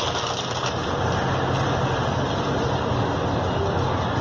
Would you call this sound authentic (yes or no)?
yes